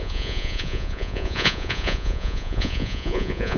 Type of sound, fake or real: fake